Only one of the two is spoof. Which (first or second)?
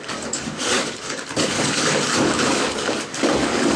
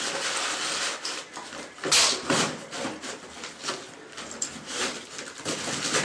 first